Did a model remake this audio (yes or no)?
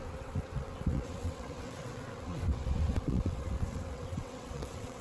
yes